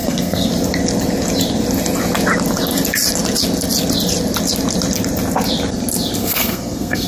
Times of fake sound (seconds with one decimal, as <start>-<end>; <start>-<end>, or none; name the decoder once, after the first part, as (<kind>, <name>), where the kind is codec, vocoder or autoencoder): 0.0-0.5 (codec, SNAC); 6.2-7.1